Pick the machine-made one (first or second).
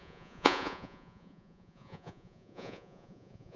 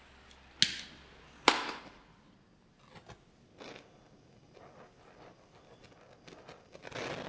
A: first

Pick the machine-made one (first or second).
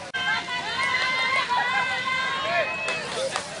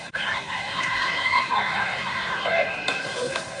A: second